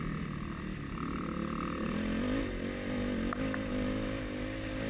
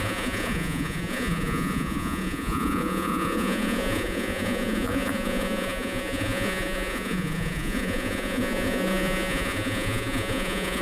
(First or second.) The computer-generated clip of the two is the second